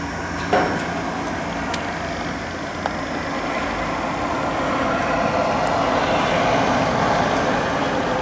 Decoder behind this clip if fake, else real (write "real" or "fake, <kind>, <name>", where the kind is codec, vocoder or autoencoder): real